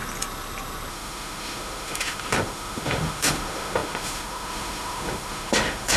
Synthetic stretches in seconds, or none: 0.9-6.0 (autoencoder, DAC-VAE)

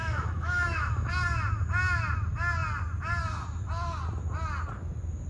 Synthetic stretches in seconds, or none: 0.0-1.1 (autoencoder, DAC-VAE)

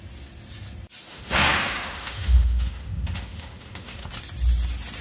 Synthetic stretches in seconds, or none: 1.1-4.1 (autoencoder, DAC-VAE)

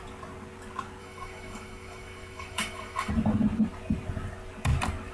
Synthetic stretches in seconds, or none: 1.0-3.1 (autoencoder, DAC-VAE)

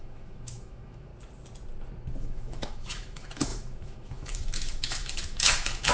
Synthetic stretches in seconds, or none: 0.0-1.1 (autoencoder, DAC-VAE); 2.2-5.9

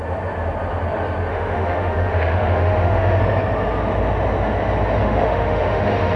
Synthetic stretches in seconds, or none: 1.3-3.2 (autoencoder, DAC-VAE); 5.0-6.2